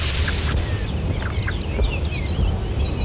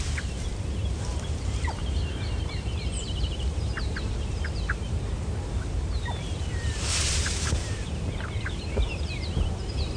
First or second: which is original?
first